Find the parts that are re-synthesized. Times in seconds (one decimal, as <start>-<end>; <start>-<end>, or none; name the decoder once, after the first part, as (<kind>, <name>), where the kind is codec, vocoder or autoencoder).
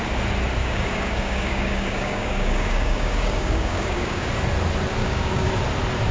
0.6-4.3 (codec, DAC); 5.0-5.5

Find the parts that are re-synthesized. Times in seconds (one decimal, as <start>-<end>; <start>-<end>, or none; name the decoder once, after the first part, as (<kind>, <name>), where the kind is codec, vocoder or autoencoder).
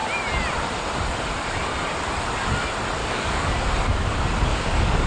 3.0-3.5 (codec, DAC); 4.5-5.1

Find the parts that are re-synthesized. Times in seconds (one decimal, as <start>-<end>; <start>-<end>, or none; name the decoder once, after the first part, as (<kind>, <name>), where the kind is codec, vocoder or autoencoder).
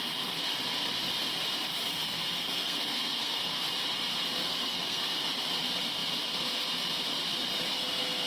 1.9-3.6 (codec, SNAC); 4.4-5.0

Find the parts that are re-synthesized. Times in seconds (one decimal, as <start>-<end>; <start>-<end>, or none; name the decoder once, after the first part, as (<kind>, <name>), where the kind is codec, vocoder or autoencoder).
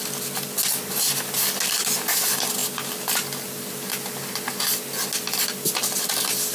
none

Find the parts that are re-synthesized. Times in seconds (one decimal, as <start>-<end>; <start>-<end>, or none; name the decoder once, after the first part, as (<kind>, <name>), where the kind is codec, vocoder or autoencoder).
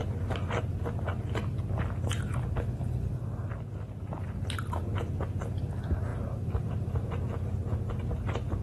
0.0-0.6 (vocoder, BigVGAN v2)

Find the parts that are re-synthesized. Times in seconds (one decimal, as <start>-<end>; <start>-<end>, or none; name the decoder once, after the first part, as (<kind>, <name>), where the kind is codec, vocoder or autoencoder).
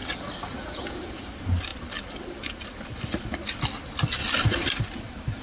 1.7-3.0 (vocoder, BigVGAN v2); 4.2-4.7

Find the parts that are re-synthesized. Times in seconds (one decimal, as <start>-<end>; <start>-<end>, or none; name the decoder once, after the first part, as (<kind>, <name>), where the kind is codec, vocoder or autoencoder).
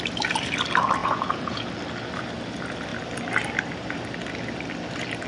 1.0-1.7 (vocoder, Vocos)